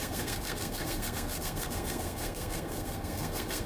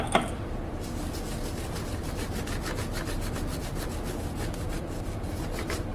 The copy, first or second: first